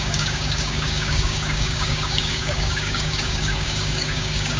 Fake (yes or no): yes